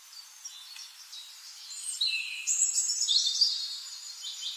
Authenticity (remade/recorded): remade